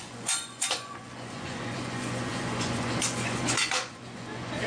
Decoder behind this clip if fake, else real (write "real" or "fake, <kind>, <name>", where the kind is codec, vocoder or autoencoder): fake, vocoder, Vocos